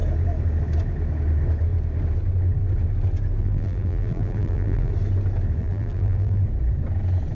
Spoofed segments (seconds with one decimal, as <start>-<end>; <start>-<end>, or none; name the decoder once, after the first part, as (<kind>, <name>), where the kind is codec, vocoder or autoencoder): 3.4-4.9 (vocoder, BigVGAN v2); 5.6-6.4